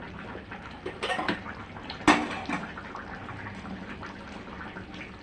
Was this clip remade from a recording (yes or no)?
no